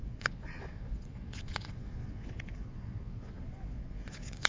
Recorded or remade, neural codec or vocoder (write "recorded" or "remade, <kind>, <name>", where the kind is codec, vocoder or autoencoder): remade, vocoder, Vocos